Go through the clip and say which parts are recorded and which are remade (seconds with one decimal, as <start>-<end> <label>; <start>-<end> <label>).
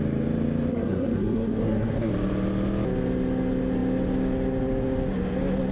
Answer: 0.0-0.7 recorded; 0.7-2.1 remade; 2.1-5.7 recorded